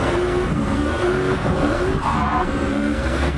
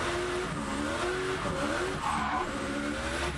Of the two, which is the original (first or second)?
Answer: second